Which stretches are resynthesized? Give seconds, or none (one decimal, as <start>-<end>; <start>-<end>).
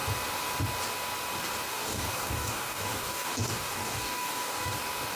1.7-4.8